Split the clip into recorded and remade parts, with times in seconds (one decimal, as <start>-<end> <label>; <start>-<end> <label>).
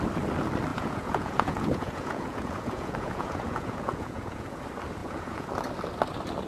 0.0-0.7 recorded; 0.7-4.6 remade; 4.6-5.0 recorded; 5.0-5.5 remade; 5.5-6.5 recorded